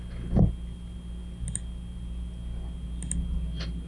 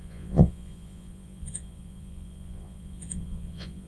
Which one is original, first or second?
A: first